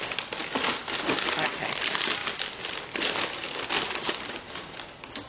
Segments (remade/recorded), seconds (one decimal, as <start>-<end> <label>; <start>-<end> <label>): 0.0-5.3 recorded